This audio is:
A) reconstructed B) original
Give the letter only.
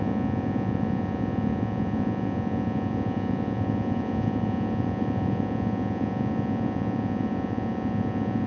A